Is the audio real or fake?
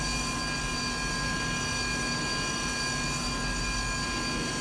real